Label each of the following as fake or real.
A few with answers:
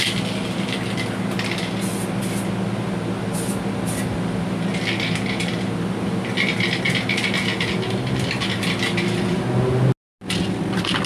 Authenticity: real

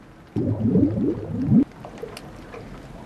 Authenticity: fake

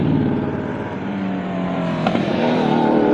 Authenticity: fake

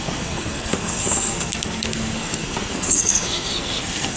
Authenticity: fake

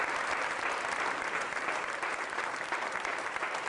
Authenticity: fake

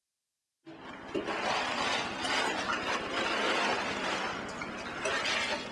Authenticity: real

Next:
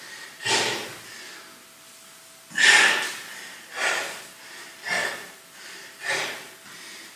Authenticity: real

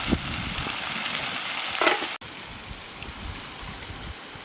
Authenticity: real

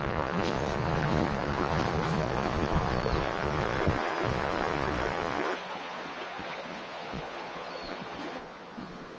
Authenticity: fake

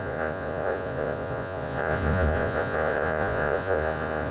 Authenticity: fake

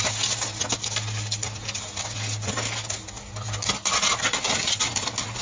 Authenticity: real